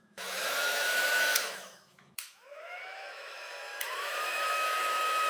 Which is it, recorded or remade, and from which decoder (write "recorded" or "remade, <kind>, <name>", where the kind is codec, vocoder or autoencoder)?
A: remade, autoencoder, DAC-VAE